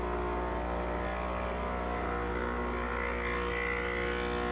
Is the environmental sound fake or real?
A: real